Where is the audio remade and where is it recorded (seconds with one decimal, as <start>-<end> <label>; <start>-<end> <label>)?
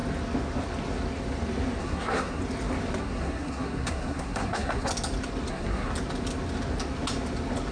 0.0-1.8 recorded; 1.8-2.4 remade; 2.4-3.0 recorded; 3.0-4.9 remade; 4.9-5.5 recorded; 5.5-5.9 remade; 5.9-7.7 recorded